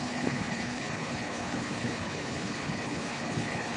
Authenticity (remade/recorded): remade